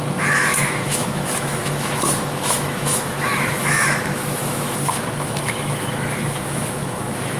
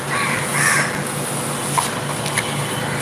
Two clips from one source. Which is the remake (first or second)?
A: first